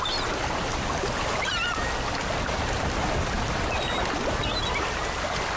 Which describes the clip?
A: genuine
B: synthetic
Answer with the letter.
A